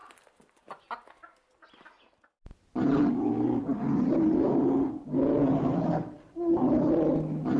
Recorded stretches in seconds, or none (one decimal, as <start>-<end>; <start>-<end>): 0.0-7.6